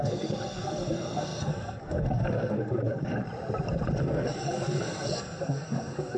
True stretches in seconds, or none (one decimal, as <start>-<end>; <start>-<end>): 3.1-4.0